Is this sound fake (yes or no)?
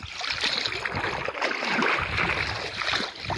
no